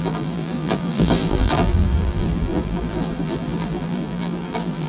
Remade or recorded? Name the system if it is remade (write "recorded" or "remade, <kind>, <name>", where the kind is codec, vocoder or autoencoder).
remade, vocoder, BigVGAN v2